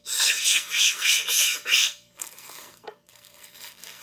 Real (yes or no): no